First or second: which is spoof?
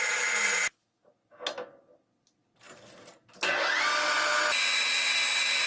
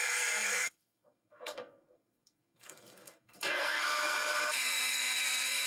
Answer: second